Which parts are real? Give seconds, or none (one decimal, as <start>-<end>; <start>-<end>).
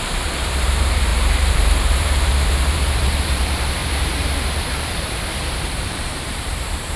none